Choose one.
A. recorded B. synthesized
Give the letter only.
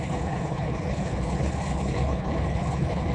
B